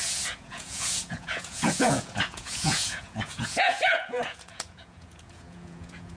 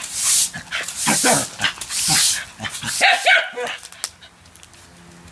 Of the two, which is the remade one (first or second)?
first